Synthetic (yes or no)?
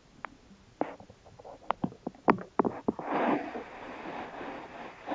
no